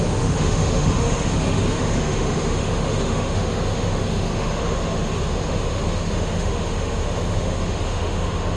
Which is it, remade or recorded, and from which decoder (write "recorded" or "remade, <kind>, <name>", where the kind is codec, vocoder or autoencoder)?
remade, autoencoder, DAC-VAE